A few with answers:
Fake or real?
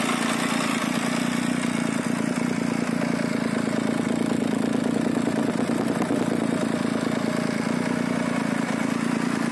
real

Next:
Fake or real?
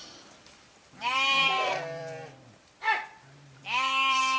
fake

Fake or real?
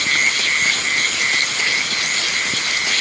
real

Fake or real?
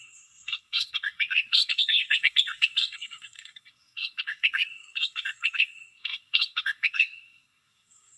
fake